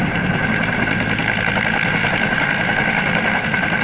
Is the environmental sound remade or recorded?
recorded